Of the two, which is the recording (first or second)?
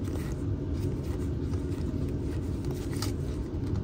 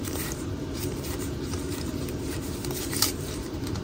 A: first